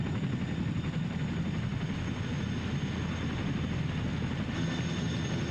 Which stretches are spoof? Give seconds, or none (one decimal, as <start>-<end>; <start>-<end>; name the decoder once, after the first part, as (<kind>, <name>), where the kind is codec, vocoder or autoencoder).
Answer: none